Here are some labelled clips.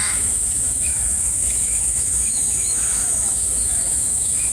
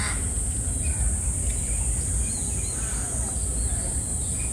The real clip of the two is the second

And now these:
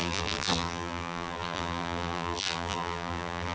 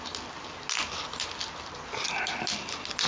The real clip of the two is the second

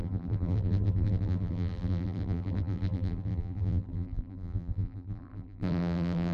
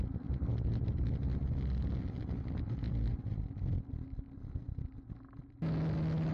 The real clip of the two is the second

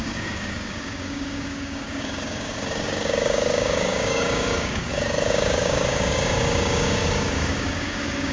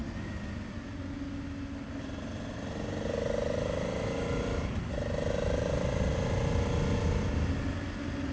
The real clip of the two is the second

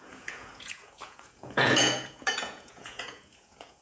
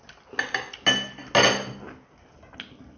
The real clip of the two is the second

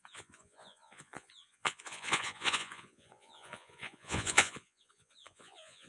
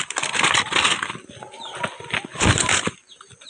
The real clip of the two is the second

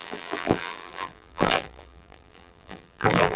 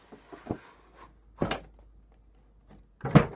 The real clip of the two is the second